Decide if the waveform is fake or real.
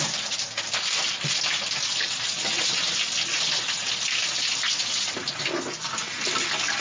real